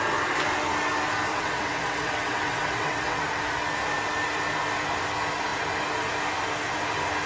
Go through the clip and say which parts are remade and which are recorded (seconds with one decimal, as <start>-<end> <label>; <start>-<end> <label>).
0.0-1.3 recorded; 1.3-3.2 remade; 3.2-7.3 recorded